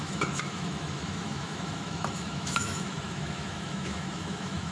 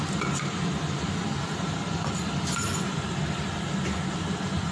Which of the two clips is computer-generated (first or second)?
first